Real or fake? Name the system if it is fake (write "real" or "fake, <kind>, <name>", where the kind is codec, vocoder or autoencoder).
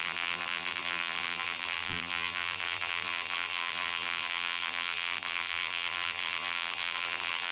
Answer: fake, vocoder, BigVGAN v2